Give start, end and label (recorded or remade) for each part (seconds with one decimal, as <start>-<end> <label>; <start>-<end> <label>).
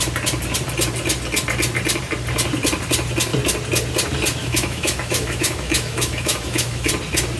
0.0-4.4 recorded; 4.4-6.9 remade; 6.9-7.4 recorded